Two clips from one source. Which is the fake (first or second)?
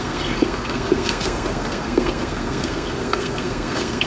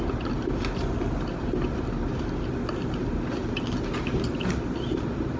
first